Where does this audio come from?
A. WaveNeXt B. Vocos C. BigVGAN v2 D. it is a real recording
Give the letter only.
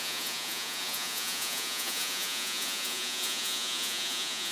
B